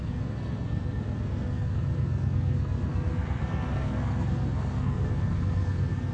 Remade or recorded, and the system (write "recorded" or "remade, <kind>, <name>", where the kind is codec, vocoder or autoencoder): remade, codec, SNAC